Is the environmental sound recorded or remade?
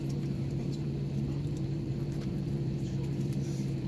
remade